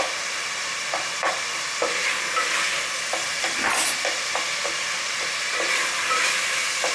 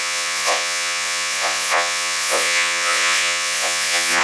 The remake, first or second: second